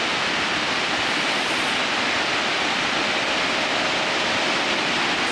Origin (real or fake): real